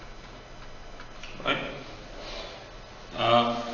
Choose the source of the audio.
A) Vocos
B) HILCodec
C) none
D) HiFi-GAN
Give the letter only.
C